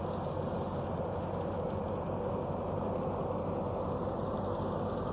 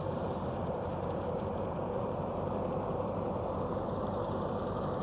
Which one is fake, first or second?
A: second